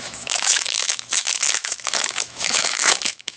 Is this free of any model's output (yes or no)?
no